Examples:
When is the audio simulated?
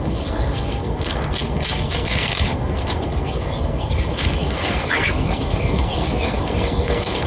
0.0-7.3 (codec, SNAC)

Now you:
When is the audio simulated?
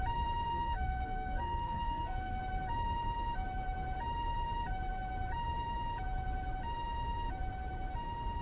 0.5-2.4 (codec, SNAC)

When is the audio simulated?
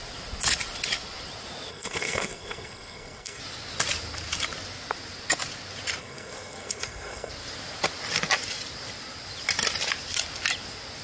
1.7-3.4 (codec, SNAC); 6.0-7.3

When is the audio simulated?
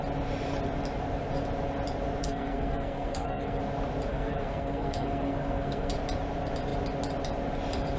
2.2-3.6 (codec, SNAC); 4.1-5.9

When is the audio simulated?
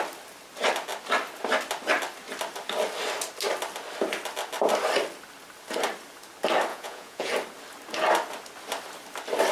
6.7-7.3 (vocoder, Vocos)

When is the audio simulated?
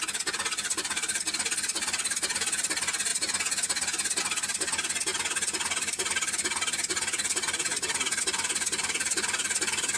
none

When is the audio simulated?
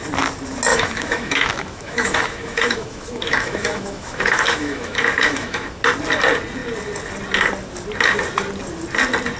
0.7-5.8 (autoencoder, DAC-VAE)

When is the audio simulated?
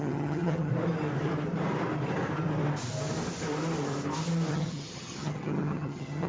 0.0-0.7 (vocoder, HiFi-GAN); 4.5-6.3